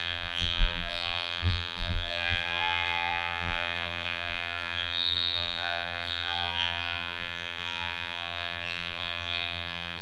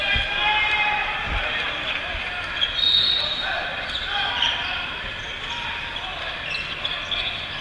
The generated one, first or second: first